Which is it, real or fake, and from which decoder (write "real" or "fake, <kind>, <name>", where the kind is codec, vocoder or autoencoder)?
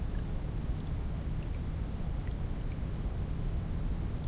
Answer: real